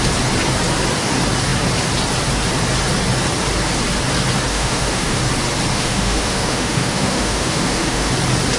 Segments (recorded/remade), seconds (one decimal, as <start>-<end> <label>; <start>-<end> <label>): 0.0-4.5 recorded; 4.5-5.2 remade; 5.2-5.7 recorded; 5.7-8.1 remade; 8.1-8.6 recorded